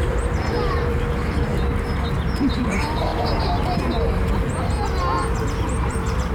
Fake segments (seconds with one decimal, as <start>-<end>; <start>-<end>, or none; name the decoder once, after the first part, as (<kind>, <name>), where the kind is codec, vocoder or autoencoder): 0.0-1.5 (vocoder, BigVGAN v2); 2.1-3.1